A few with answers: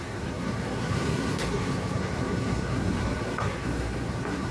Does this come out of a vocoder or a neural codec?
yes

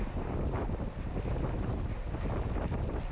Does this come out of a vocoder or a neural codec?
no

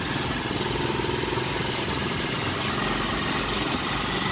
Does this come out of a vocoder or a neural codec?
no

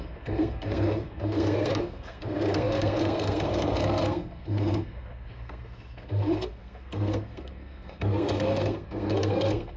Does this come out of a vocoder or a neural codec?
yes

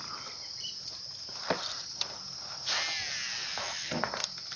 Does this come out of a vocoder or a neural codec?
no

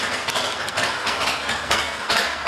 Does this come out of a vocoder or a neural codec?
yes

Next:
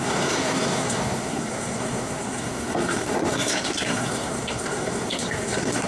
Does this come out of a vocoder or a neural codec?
yes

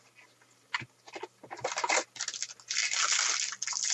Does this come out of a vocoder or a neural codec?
no